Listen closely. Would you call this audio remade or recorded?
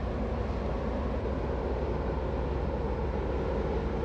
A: recorded